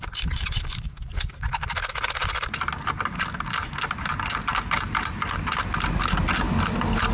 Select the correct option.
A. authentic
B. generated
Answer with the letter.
A